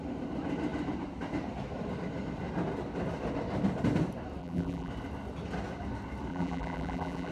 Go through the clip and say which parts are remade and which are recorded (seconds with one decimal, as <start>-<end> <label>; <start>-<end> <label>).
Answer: 0.0-4.4 recorded; 4.4-4.9 remade; 4.9-6.3 recorded; 6.3-7.3 remade

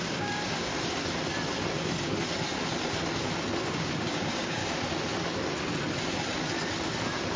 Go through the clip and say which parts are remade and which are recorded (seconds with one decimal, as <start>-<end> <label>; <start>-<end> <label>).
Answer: 0.0-0.7 remade; 0.7-3.7 recorded; 3.7-4.6 remade; 4.6-7.4 recorded

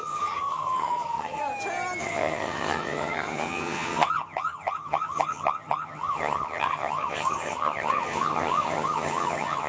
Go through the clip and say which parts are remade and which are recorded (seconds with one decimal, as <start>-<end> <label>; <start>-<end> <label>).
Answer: 0.0-1.4 remade; 1.4-2.0 recorded; 2.0-9.7 remade

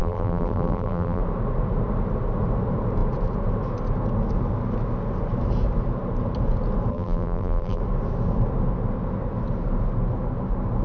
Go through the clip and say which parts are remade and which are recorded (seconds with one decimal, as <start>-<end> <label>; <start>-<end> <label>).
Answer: 0.0-1.2 remade; 1.2-6.9 recorded; 6.9-7.8 remade; 7.8-10.8 recorded

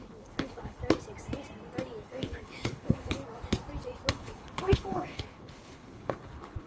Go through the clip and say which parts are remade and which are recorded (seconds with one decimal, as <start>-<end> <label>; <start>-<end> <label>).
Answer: 0.0-0.8 remade; 0.8-2.0 recorded; 2.0-3.2 remade; 3.2-4.1 recorded; 4.1-6.7 remade